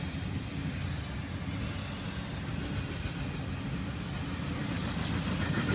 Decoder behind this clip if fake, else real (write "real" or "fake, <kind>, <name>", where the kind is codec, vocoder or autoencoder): real